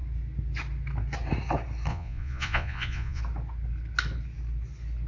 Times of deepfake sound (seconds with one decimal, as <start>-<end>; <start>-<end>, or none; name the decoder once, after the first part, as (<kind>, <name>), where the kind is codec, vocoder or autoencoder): 1.9-3.2 (vocoder, Vocos)